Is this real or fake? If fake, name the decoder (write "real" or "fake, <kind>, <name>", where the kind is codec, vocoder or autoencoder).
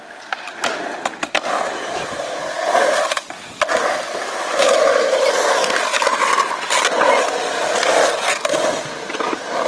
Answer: real